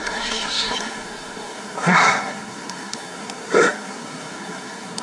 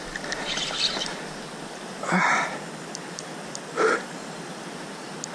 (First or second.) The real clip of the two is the second